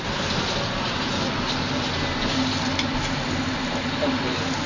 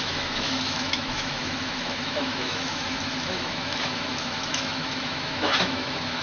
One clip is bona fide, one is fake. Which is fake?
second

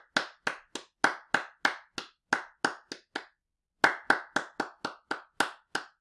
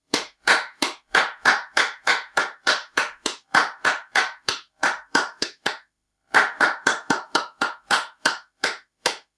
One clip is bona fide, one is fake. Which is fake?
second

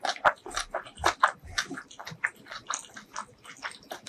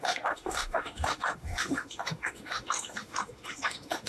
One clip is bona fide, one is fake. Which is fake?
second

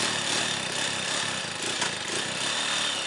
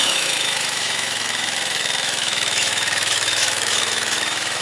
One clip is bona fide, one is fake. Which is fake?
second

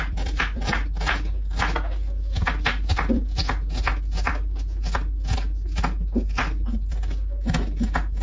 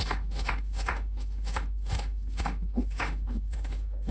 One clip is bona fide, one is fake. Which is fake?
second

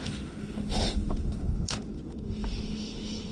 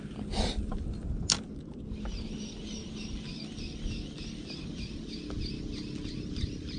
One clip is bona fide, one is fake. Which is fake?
first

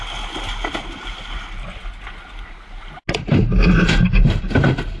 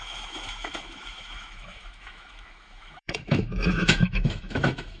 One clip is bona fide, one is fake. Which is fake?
second